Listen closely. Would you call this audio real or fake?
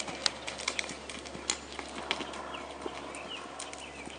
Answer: real